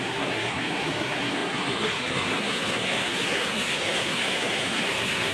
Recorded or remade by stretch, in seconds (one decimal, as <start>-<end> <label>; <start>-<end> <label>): 0.0-5.3 remade